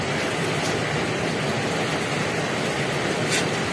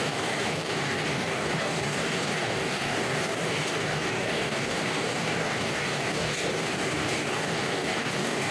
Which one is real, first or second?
first